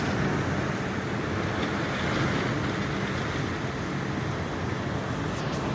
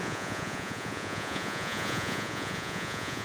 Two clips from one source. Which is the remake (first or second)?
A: second